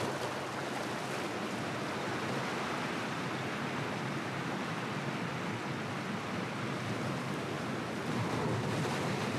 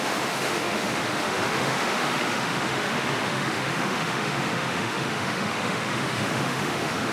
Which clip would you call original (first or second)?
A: first